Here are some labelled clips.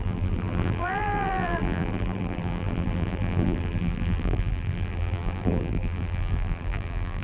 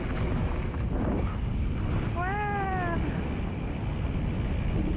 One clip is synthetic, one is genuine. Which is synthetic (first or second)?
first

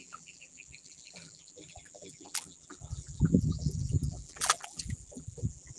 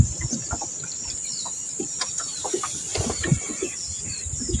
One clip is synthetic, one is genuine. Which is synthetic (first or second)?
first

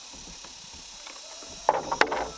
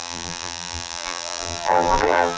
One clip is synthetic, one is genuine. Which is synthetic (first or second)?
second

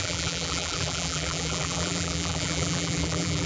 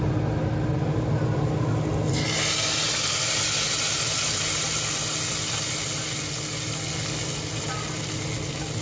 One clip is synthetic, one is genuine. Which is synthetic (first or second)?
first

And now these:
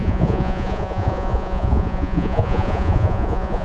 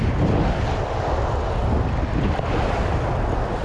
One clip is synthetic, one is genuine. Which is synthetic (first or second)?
first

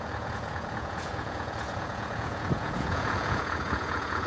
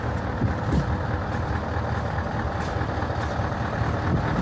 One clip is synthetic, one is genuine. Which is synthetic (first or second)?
first